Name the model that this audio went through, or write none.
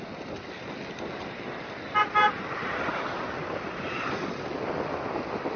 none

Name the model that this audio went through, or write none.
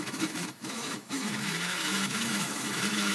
autoencoder, DAC-VAE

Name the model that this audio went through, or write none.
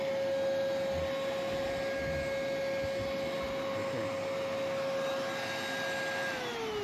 none